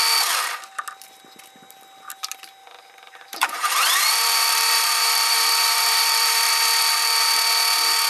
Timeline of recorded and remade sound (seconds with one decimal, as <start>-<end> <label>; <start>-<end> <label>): 0.0-2.6 recorded; 2.6-6.5 remade; 6.5-8.1 recorded